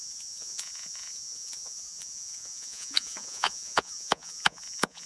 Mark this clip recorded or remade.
remade